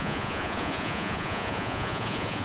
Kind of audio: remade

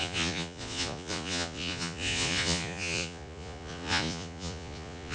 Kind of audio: remade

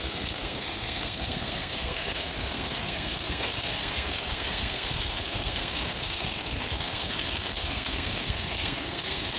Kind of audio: remade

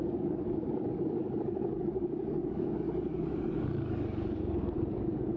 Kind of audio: remade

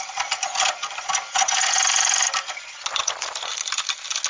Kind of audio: recorded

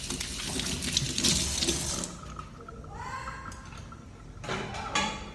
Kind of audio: recorded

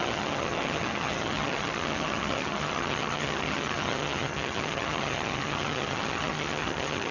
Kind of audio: remade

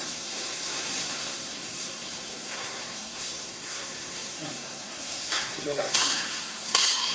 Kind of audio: remade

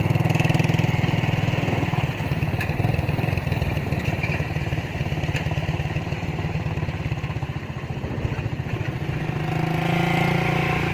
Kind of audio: recorded